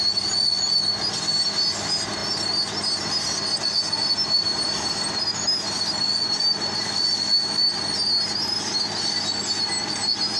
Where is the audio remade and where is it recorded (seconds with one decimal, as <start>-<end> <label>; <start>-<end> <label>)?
0.0-10.4 recorded